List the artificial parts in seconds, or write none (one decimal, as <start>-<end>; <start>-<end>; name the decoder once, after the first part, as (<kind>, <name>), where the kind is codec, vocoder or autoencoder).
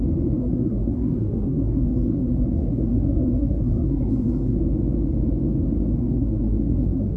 0.4-4.6 (codec, SNAC); 6.0-7.2